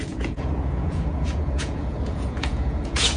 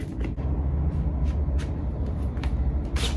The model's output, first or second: first